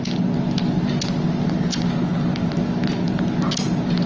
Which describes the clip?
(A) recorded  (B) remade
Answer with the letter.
A